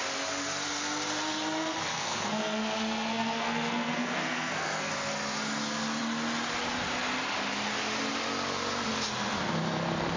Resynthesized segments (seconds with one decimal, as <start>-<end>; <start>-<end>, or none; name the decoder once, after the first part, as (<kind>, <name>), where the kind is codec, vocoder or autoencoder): 1.9-4.9 (codec, SNAC)